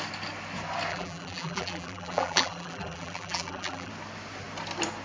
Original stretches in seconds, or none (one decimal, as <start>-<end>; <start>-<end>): 0.0-0.9; 3.9-5.0